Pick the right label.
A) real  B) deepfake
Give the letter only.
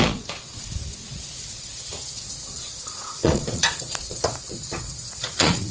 B